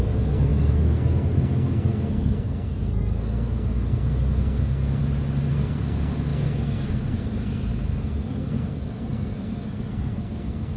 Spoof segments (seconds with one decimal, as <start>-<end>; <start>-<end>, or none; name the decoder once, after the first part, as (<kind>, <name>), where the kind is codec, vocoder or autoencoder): 0.0-5.0 (codec, SNAC); 5.5-10.8